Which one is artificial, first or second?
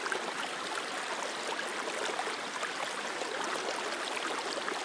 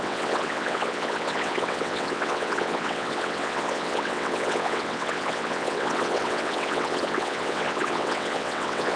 second